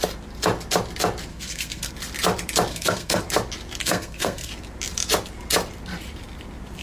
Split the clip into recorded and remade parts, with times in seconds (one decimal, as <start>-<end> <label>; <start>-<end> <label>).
0.0-1.3 recorded; 1.3-1.9 remade; 1.9-2.7 recorded; 2.7-3.2 remade; 3.2-3.8 recorded; 3.8-4.5 remade; 4.5-6.8 recorded